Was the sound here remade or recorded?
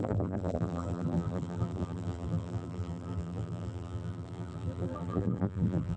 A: remade